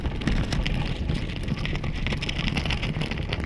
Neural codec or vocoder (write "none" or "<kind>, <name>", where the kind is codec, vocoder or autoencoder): none